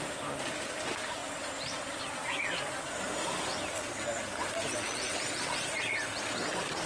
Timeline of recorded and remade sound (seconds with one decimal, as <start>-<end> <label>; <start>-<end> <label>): 0.0-6.9 recorded